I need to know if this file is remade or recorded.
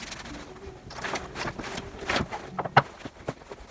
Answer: recorded